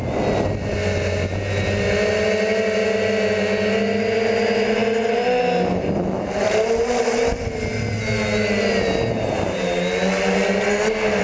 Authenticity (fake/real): real